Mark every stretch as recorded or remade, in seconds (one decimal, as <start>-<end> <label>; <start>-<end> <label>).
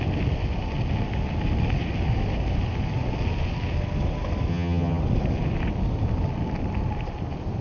0.0-4.5 recorded; 4.5-5.0 remade; 5.0-7.6 recorded